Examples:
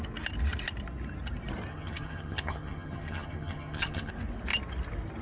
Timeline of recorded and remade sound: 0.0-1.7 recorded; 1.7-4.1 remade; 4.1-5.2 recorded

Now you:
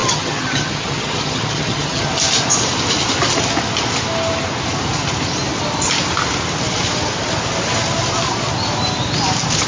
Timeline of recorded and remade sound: 0.0-2.1 remade; 2.1-9.7 recorded

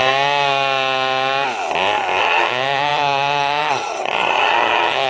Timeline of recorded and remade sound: 0.0-2.2 recorded; 2.2-5.1 remade

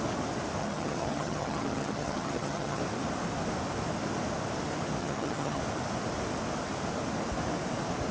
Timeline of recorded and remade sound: 0.0-0.6 recorded; 0.6-2.8 remade; 2.8-5.0 recorded; 5.0-5.6 remade; 5.6-8.1 recorded

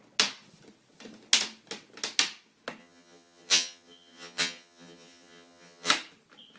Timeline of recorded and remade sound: 0.0-2.8 recorded; 2.8-5.9 remade; 5.9-6.6 recorded

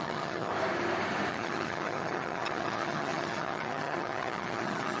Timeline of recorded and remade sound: 0.0-0.5 remade; 0.5-1.3 recorded; 1.3-5.0 remade